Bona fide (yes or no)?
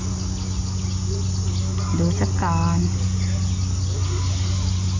yes